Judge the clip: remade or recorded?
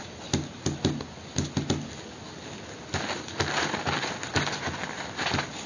recorded